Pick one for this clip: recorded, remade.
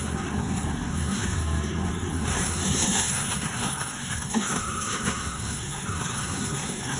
remade